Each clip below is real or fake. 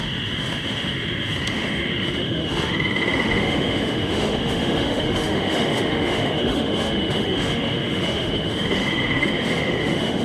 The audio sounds fake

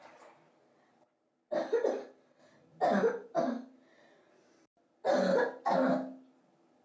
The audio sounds real